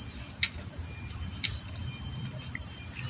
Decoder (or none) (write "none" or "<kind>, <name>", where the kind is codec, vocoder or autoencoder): none